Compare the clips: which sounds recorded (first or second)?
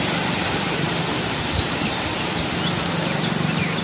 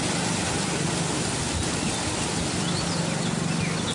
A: second